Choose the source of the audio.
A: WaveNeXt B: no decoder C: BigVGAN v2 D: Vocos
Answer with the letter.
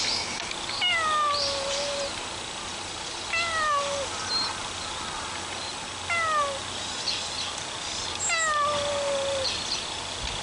B